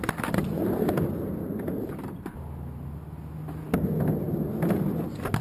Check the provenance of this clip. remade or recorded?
recorded